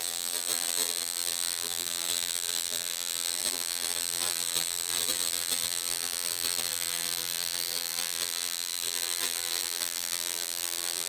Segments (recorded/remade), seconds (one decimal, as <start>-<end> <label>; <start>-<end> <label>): 0.0-11.1 remade